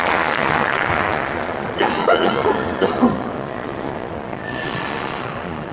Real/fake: fake